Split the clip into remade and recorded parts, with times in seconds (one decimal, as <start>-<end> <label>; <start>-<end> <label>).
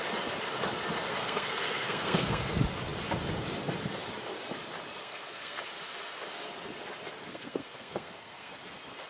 0.0-1.1 recorded; 1.1-2.5 remade; 2.5-5.0 recorded; 5.0-5.6 remade; 5.6-7.3 recorded; 7.3-8.5 remade; 8.5-9.1 recorded